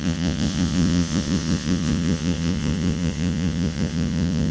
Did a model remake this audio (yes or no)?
yes